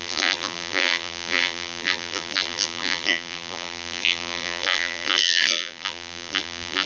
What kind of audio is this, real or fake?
fake